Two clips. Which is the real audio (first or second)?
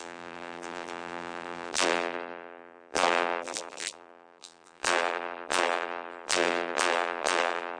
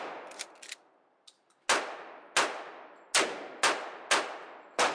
second